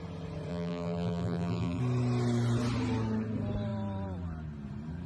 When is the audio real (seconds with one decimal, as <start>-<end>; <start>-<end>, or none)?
0.0-0.5; 1.8-5.1